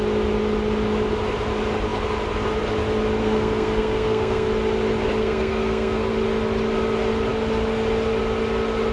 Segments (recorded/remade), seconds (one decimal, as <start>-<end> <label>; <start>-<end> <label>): 0.0-3.2 recorded; 3.2-4.5 remade; 4.5-5.2 recorded; 5.2-6.1 remade; 6.1-8.9 recorded